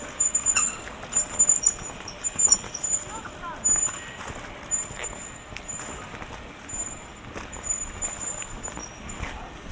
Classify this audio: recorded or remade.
recorded